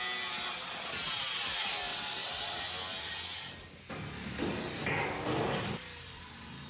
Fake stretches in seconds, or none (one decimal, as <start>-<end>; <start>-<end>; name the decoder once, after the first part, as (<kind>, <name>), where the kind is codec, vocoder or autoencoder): 1.9-2.6 (vocoder, WaveNeXt)